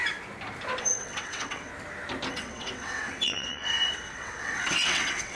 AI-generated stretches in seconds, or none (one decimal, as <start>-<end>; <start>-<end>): 0.8-1.7; 2.3-5.3